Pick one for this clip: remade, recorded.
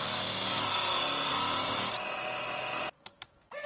recorded